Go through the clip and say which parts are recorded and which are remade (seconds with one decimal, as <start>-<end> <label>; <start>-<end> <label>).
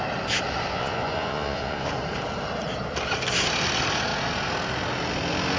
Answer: 0.0-0.7 recorded; 0.7-1.9 remade; 1.9-5.6 recorded